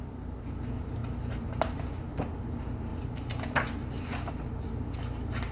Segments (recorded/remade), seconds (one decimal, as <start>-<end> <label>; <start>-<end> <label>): 0.0-5.5 recorded